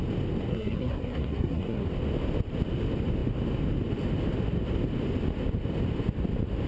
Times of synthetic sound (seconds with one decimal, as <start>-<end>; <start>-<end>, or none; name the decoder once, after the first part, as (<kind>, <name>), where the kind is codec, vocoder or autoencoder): 0.5-1.9 (codec, SNAC)